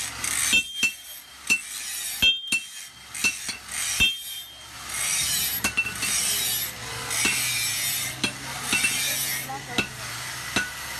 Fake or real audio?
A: real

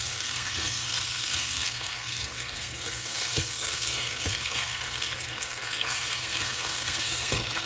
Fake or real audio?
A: fake